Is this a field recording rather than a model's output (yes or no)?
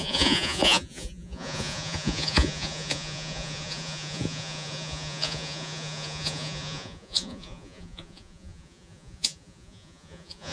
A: no